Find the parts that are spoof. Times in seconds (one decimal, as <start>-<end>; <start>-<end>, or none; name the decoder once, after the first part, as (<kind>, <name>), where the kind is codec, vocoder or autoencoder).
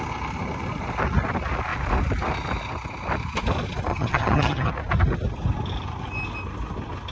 3.9-4.7 (vocoder, HiFi-GAN)